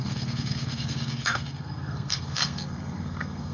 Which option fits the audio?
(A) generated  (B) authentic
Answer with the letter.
A